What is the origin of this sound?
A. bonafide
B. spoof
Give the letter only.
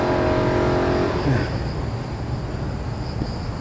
A